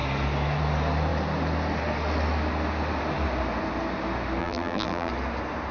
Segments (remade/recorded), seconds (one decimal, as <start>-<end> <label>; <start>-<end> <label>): 0.0-4.4 recorded; 4.4-5.1 remade; 5.1-5.7 recorded